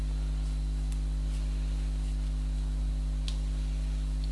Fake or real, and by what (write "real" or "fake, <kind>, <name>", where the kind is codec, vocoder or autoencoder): real